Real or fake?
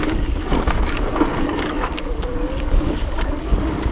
fake